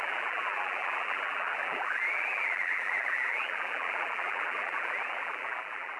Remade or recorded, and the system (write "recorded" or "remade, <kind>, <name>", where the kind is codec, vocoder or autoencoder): remade, vocoder, BigVGAN v2